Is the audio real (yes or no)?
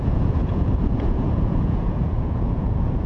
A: no